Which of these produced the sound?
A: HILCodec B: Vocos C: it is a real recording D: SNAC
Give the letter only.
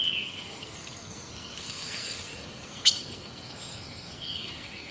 D